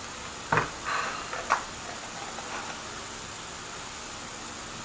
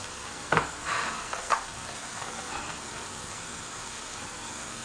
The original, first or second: first